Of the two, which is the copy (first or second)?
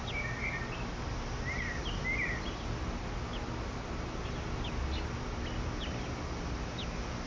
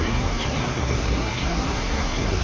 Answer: second